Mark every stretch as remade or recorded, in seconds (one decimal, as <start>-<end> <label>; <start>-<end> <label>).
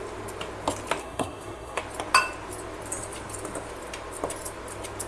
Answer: 0.0-1.0 recorded; 1.0-1.8 remade; 1.8-5.1 recorded